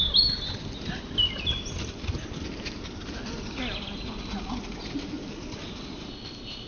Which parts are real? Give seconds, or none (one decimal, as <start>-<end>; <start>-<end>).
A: 0.0-6.1